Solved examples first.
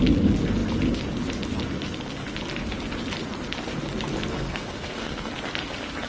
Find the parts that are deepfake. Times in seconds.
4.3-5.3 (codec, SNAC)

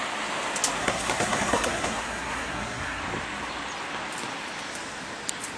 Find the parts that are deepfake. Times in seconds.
0.8-3.0 (codec, SNAC)

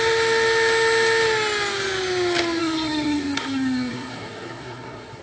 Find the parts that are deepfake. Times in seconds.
2.6-5.2 (codec, SNAC)